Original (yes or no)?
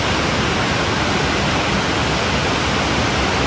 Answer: yes